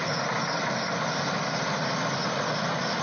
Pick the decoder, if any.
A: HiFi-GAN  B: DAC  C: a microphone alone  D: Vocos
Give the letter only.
C